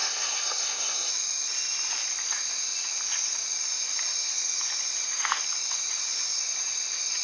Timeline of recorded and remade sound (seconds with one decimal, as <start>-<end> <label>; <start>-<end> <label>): 0.0-1.1 remade; 1.1-7.2 recorded